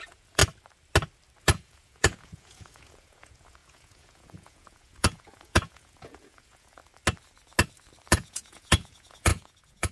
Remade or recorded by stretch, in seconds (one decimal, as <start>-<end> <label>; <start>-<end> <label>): 0.0-0.4 remade; 0.4-1.4 recorded; 1.4-6.8 remade; 6.8-8.1 recorded; 8.1-9.9 remade